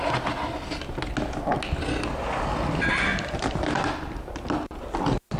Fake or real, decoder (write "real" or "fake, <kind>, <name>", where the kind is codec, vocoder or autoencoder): real